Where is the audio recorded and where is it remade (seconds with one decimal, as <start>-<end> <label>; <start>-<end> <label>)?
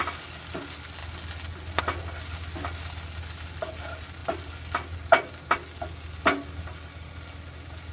0.0-7.9 recorded